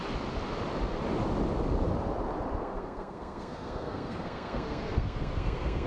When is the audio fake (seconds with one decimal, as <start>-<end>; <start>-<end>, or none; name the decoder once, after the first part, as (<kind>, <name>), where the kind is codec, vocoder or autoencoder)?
2.6-5.9 (codec, SNAC)